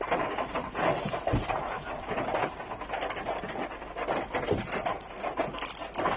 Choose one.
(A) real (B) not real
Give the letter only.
A